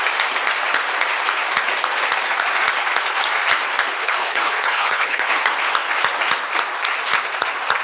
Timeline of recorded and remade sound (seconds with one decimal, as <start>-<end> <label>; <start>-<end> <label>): 0.0-4.0 recorded; 4.0-5.3 remade; 5.3-7.8 recorded